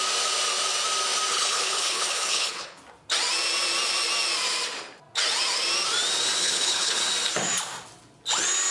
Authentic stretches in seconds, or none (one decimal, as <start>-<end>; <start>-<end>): 0.0-1.3; 2.8-6.4; 7.0-8.7